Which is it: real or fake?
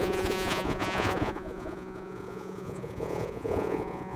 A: fake